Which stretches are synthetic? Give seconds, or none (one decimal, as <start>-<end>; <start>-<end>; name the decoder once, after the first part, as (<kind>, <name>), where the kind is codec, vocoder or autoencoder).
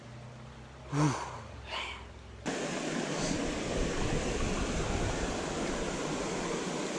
none